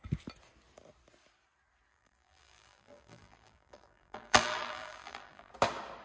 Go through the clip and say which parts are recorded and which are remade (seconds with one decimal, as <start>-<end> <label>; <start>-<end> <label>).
0.0-1.9 recorded; 1.9-5.5 remade; 5.5-6.0 recorded